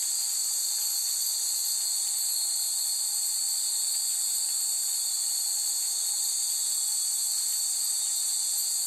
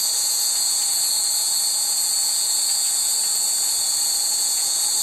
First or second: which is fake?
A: second